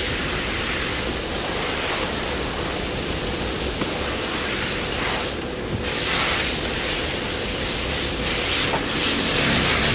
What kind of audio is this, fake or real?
real